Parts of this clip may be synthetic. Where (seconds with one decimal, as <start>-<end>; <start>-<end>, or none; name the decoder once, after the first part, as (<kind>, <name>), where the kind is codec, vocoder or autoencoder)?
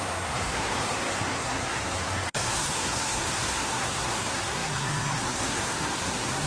0.0-6.5 (codec, SNAC)